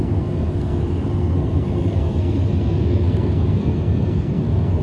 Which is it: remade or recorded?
remade